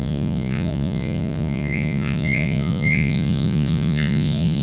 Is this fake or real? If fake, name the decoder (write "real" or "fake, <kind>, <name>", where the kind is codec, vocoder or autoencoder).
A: fake, vocoder, Vocos